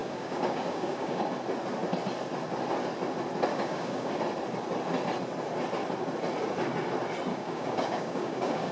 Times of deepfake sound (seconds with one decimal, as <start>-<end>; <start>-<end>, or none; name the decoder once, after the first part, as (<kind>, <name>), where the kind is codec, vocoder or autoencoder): 0.0-1.2 (codec, DAC); 3.5-4.1; 7.3-8.7